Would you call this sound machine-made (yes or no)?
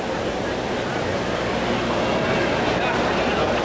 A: no